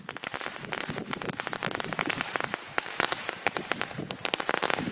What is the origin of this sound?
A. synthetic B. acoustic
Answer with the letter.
A